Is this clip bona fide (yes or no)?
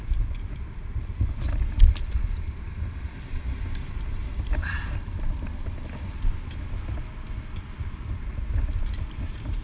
yes